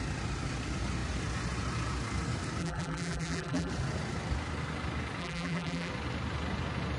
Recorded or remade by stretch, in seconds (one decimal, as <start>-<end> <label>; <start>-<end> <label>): 0.0-2.6 recorded; 2.6-3.7 remade; 3.7-5.2 recorded; 5.2-5.9 remade; 5.9-7.0 recorded